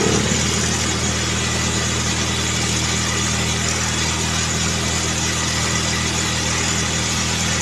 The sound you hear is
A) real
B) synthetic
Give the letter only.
A